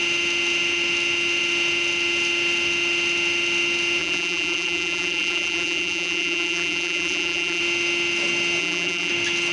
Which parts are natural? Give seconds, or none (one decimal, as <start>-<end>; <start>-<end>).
0.0-4.0; 7.6-8.6; 9.1-9.5